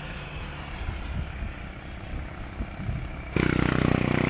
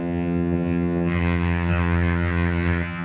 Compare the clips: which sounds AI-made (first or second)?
second